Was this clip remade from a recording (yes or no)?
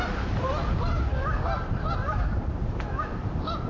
no